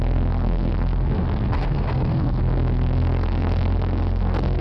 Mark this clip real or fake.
fake